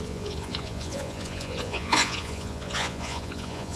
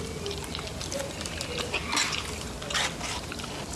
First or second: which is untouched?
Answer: second